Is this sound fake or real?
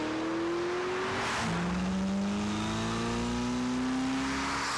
real